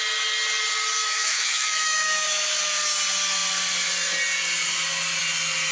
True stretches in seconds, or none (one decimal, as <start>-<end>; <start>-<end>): 0.0-1.0; 2.6-5.7